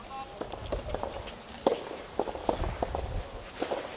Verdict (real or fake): real